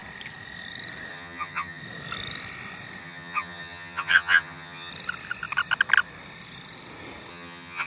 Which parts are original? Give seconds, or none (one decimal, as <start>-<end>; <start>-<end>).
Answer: 0.0-1.1; 1.8-3.0; 4.9-7.3